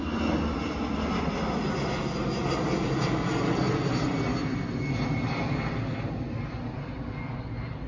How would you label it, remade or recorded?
recorded